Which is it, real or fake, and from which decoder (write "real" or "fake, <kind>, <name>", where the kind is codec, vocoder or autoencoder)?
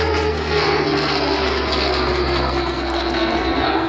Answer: fake, codec, SNAC